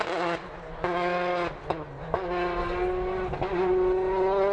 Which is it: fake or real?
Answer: real